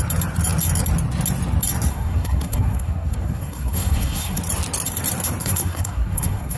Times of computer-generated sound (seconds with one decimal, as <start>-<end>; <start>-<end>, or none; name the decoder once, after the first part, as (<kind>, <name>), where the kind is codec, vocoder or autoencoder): 1.9-4.4 (codec, SNAC); 5.4-6.6